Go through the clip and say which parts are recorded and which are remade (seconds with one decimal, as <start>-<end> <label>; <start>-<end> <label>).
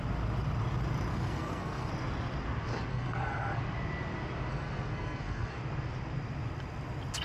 0.0-1.1 recorded; 1.1-1.9 remade; 1.9-2.9 recorded; 2.9-3.6 remade; 3.6-4.5 recorded; 4.5-5.6 remade; 5.6-7.2 recorded